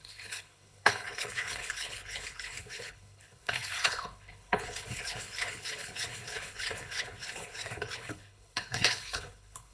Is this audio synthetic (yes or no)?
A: yes